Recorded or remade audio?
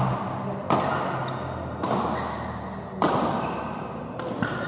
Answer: recorded